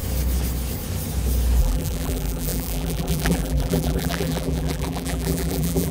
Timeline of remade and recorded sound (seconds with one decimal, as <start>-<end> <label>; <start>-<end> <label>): 0.0-1.6 recorded; 1.6-5.9 remade